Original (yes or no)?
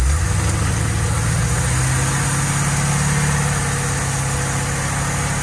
yes